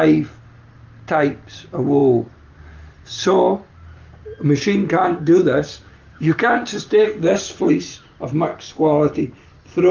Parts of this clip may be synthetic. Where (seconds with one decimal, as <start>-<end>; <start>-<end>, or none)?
5.1-7.7; 8.5-9.2